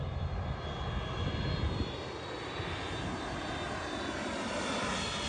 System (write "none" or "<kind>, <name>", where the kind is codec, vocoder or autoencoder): none